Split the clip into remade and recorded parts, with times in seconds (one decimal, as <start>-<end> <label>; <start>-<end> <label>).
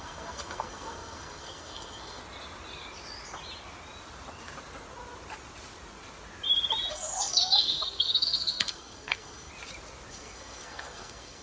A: 0.0-2.2 remade; 2.2-6.9 recorded; 6.9-9.5 remade; 9.5-10.1 recorded; 10.1-11.4 remade